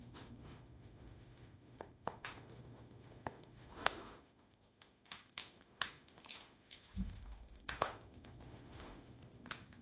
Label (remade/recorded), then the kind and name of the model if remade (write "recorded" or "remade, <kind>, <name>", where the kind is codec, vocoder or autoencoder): remade, autoencoder, DAC-VAE